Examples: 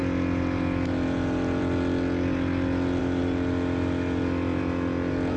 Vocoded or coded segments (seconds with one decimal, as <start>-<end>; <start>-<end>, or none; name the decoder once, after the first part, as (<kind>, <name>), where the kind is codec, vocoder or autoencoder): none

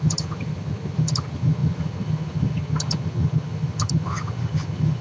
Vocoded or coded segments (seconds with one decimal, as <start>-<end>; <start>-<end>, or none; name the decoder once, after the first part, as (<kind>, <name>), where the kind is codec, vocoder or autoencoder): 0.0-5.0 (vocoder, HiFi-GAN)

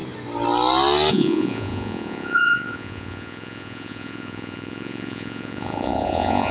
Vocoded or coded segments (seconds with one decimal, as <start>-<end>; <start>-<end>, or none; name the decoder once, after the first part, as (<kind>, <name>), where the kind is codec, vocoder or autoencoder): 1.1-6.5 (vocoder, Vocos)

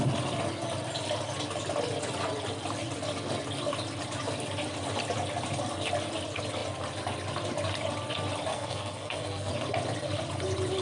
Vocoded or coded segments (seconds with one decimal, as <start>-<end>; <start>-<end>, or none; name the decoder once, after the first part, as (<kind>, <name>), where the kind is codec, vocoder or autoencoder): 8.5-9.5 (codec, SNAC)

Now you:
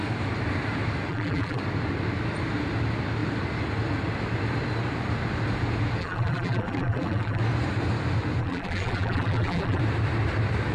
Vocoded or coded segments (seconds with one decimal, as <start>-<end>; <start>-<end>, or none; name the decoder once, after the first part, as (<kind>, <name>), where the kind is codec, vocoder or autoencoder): 1.1-1.6 (vocoder, BigVGAN v2); 6.0-7.4; 8.4-9.8

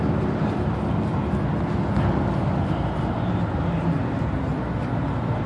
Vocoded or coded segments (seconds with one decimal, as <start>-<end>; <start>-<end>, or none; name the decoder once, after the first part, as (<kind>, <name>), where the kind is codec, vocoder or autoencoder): none

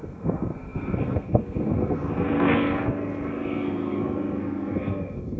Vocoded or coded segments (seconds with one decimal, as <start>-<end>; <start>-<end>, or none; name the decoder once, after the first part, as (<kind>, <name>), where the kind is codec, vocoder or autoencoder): 0.0-5.4 (codec, SNAC)

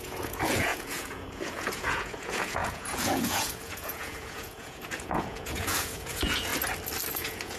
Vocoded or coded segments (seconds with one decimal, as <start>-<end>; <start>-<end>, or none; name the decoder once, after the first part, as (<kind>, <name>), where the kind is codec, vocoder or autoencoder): 0.0-6.5 (vocoder, Vocos); 7.1-7.6